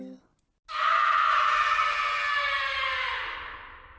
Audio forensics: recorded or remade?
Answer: recorded